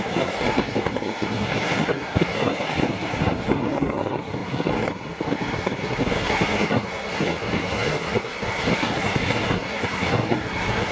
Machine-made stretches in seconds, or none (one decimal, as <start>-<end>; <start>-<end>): 0.0-10.9